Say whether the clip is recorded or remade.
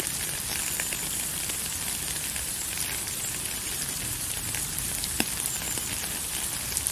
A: remade